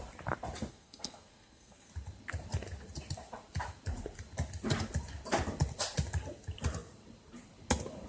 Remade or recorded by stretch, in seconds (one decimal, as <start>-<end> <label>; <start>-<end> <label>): 0.0-0.7 recorded; 0.7-1.9 remade; 1.9-8.1 recorded